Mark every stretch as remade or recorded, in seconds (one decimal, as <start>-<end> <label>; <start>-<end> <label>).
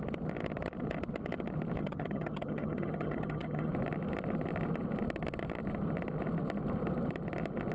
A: 0.0-1.8 recorded; 1.8-3.7 remade; 3.7-7.7 recorded